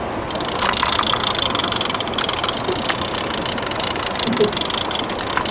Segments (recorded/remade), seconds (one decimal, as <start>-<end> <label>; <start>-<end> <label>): 0.0-1.6 recorded; 1.6-2.6 remade; 2.6-5.5 recorded